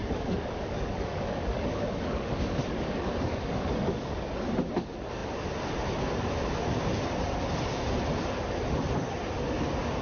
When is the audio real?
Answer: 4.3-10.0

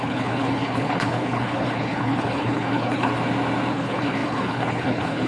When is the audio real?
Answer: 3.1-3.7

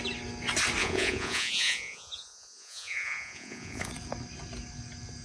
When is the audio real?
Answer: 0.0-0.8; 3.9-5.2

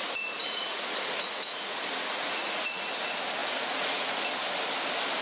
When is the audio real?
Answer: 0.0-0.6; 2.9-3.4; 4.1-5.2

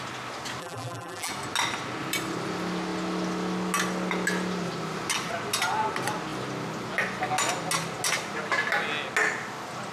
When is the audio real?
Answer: 0.0-0.6; 1.3-9.9

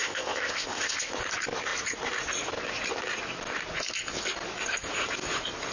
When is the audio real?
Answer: 1.1-5.7